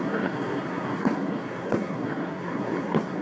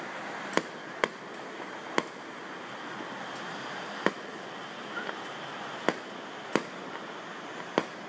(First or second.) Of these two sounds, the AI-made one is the first